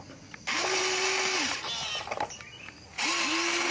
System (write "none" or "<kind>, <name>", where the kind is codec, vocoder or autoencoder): none